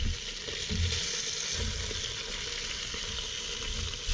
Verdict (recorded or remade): recorded